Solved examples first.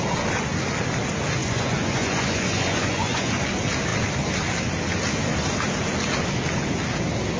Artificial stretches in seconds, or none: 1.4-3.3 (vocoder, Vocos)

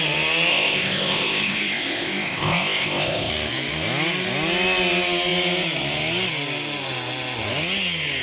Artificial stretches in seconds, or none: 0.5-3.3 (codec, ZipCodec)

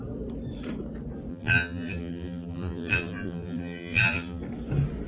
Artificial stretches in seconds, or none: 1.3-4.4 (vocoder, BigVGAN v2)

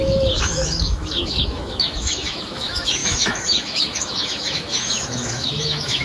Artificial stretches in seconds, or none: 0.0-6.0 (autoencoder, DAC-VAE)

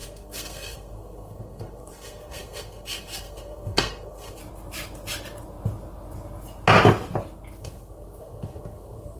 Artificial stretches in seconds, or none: 0.0-4.4 (codec, SNAC); 7.6-9.2

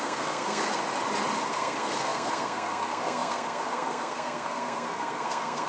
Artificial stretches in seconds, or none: 0.0-0.8 (codec, SNAC); 1.5-5.7

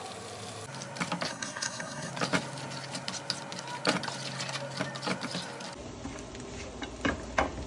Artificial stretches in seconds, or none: 1.3-2.1 (codec, SNAC)